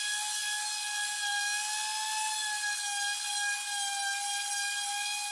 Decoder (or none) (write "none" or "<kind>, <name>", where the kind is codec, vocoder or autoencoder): none